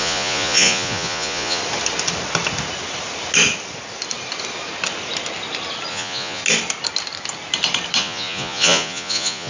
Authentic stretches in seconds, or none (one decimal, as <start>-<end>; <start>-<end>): 1.6-5.9; 6.4-8.0